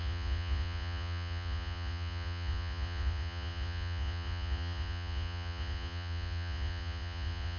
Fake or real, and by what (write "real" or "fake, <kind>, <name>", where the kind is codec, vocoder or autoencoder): fake, vocoder, Vocos